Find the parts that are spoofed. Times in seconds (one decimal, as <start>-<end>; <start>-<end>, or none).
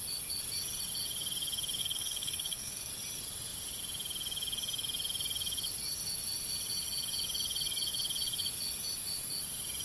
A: 1.8-2.9